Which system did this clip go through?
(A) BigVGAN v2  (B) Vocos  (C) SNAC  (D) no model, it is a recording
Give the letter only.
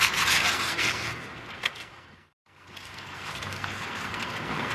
C